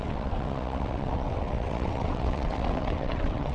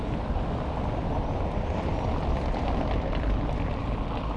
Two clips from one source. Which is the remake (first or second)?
first